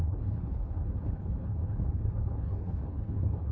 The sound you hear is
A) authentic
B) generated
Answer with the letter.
B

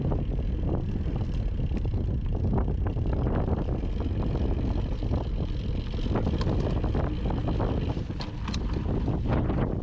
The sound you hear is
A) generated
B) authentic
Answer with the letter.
B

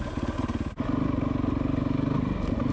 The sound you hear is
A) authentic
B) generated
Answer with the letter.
A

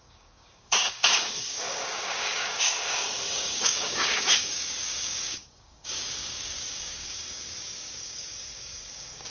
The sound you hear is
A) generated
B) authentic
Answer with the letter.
A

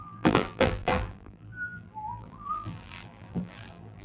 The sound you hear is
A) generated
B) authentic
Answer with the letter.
A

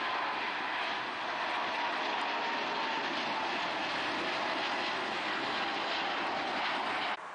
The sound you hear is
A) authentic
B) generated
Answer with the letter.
A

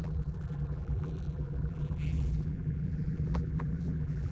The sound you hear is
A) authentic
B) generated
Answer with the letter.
B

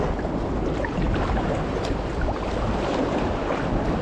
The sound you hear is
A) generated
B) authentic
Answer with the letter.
B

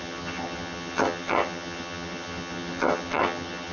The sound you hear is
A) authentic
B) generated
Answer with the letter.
B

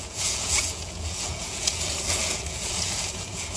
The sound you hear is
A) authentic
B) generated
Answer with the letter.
B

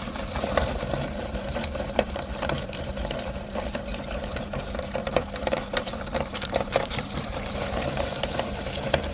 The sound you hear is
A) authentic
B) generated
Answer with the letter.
B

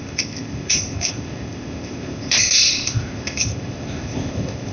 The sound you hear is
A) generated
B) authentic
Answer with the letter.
A